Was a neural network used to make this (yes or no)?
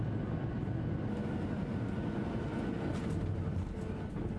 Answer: no